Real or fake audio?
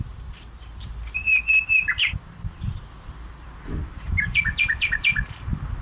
fake